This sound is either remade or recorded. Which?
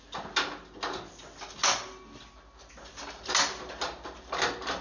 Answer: recorded